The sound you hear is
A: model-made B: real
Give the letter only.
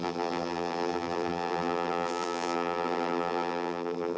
A